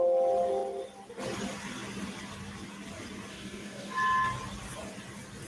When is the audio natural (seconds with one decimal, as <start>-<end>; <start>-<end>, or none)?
0.0-3.3; 3.9-5.5